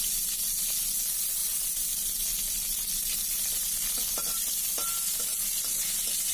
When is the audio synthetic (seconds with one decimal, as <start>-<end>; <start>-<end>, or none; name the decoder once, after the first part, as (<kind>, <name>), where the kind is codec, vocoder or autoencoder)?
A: none